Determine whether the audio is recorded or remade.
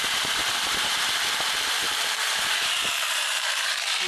remade